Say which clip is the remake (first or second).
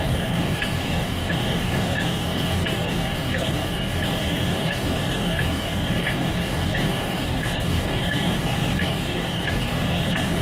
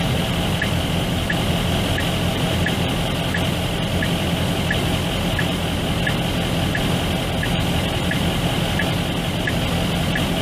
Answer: first